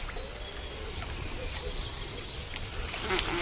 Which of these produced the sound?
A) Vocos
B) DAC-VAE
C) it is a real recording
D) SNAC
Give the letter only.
C